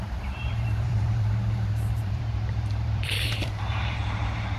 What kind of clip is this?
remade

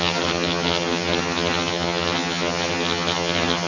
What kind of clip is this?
remade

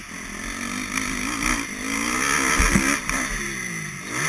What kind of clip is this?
recorded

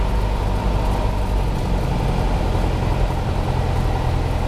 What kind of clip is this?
recorded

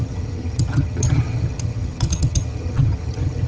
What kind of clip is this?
remade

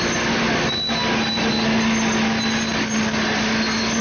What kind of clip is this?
recorded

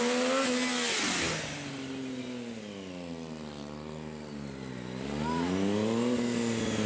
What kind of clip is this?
recorded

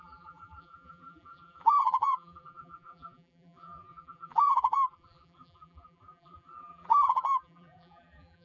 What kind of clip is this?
remade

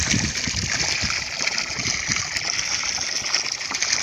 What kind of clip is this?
recorded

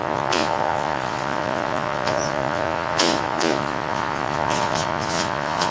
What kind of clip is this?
remade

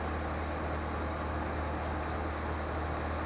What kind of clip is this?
recorded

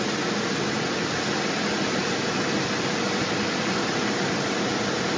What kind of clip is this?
recorded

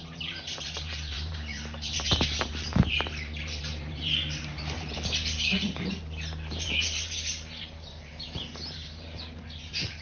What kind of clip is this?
remade